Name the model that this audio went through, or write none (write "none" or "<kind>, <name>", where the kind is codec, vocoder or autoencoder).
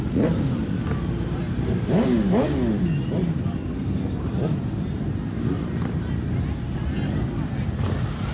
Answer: none